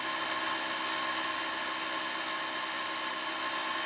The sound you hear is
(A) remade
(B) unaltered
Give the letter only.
B